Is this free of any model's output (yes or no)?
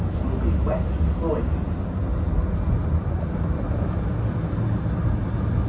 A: yes